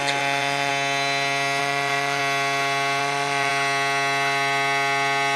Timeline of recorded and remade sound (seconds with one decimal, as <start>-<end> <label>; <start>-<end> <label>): 0.0-0.7 remade; 0.7-1.6 recorded; 1.6-2.2 remade; 2.2-3.0 recorded; 3.0-3.5 remade; 3.5-5.4 recorded

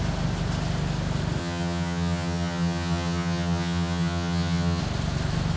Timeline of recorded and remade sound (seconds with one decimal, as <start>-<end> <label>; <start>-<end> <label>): 0.0-1.4 recorded; 1.4-4.8 remade; 4.8-5.6 recorded

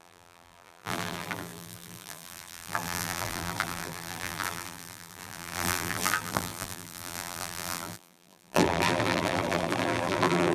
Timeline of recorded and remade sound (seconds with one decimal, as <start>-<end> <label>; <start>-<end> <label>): 0.0-10.5 remade